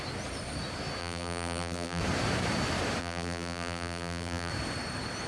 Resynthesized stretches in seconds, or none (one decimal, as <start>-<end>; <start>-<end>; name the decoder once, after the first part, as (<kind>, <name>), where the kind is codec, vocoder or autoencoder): 1.0-2.0 (vocoder, BigVGAN v2); 3.0-4.5